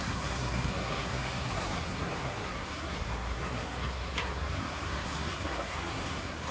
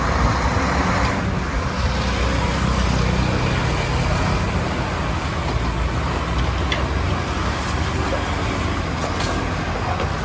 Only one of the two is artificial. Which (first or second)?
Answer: first